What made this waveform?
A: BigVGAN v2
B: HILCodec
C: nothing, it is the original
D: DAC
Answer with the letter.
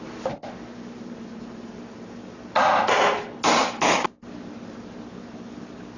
C